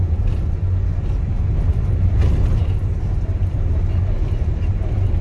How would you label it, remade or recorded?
recorded